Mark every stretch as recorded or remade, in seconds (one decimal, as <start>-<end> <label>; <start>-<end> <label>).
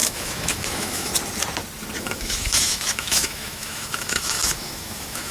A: 0.0-1.1 remade; 1.1-2.0 recorded; 2.0-5.3 remade